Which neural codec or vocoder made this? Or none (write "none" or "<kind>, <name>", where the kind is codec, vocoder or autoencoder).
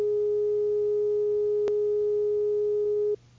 none